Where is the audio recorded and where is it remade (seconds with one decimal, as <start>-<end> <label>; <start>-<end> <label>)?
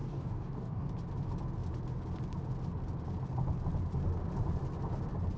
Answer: 0.0-0.9 remade; 0.9-5.4 recorded